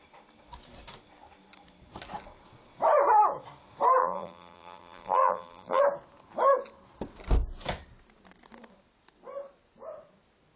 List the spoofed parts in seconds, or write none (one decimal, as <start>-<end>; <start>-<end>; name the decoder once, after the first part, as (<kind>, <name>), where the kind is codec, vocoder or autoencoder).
4.0-5.8 (vocoder, BigVGAN v2)